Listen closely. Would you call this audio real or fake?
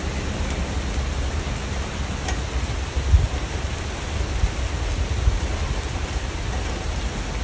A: real